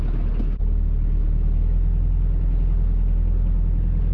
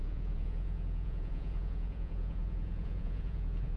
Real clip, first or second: first